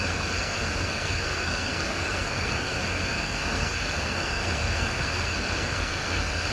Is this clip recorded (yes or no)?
no